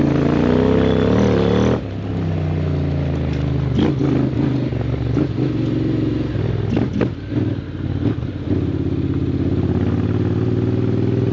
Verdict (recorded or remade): recorded